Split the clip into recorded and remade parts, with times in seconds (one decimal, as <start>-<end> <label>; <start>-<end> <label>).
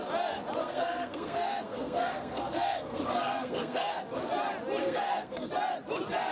0.0-0.6 recorded; 0.6-4.0 remade; 4.0-4.8 recorded; 4.8-5.5 remade; 5.5-6.3 recorded